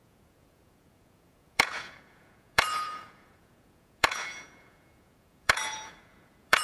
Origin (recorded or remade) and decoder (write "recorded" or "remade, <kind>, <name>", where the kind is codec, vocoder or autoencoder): remade, vocoder, Vocos